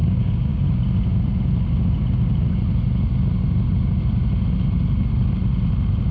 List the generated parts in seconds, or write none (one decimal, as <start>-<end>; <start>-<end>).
0.0-0.6